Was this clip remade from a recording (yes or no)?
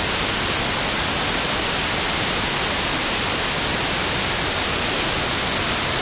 no